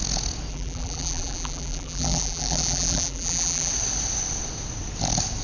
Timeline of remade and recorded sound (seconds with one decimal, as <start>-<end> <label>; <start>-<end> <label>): 0.0-0.5 recorded; 0.5-3.7 remade; 3.7-5.4 recorded

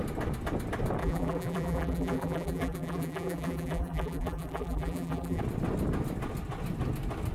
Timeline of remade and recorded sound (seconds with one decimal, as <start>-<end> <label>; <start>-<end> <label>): 0.0-1.0 recorded; 1.0-5.4 remade; 5.4-7.3 recorded

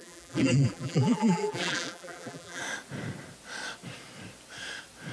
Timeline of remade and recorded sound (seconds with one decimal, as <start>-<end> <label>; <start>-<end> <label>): 0.0-2.6 remade; 2.6-5.1 recorded

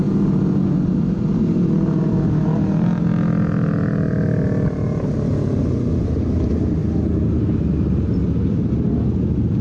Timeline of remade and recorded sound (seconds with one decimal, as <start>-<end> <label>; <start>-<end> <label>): 0.0-9.6 recorded